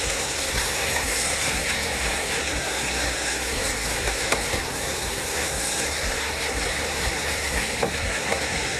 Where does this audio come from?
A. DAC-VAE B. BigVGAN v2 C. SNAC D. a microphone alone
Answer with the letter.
C